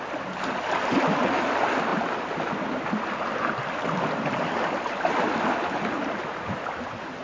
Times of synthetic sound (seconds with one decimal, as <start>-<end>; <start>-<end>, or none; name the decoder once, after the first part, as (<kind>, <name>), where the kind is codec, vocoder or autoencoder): none